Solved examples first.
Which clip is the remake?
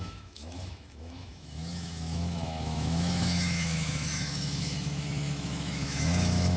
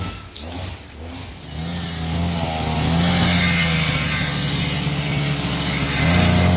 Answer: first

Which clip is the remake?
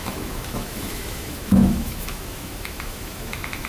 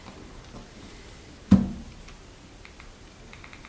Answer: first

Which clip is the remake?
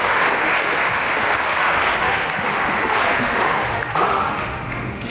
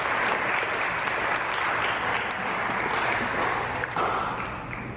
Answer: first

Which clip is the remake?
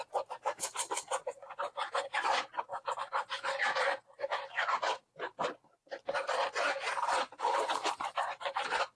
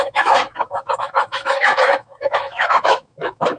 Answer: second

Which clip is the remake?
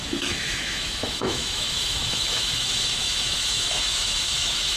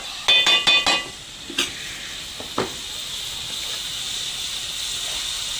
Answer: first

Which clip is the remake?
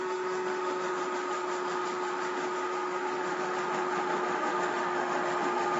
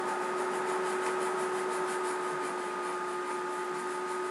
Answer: first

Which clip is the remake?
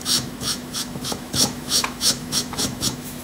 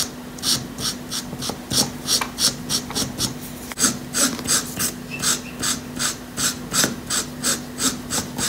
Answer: first